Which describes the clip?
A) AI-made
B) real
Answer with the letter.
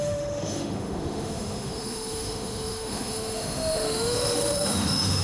A